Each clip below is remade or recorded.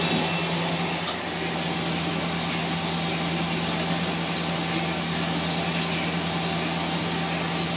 recorded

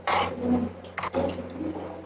recorded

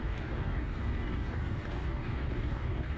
remade